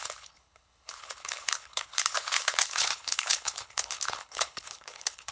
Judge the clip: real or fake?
fake